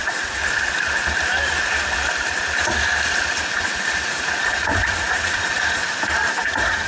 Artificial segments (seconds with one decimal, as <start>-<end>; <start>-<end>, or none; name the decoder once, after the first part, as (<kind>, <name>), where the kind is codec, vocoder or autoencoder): 0.0-0.4 (vocoder, Vocos); 3.4-5.8; 6.3-6.9